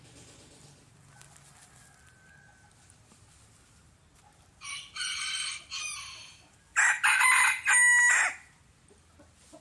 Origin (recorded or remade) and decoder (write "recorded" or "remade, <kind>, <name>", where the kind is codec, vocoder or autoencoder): recorded